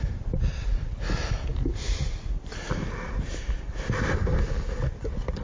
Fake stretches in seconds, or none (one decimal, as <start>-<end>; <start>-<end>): none